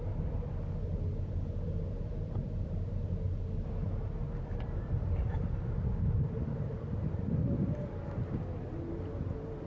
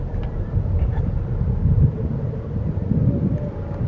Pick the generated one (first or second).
second